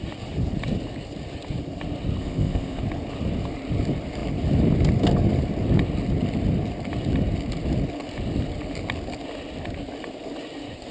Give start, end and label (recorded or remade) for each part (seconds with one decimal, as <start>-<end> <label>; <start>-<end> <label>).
0.0-2.2 recorded; 2.2-2.8 remade; 2.8-10.9 recorded